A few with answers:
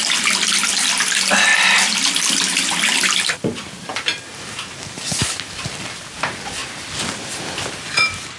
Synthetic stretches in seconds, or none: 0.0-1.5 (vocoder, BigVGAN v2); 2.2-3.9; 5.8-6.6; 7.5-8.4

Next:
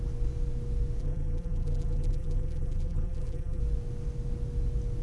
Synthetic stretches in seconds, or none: 1.0-3.6 (vocoder, BigVGAN v2)